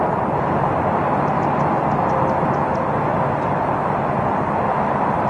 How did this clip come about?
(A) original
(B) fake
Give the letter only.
A